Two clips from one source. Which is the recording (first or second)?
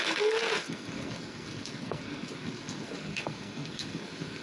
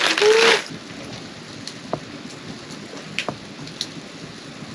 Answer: second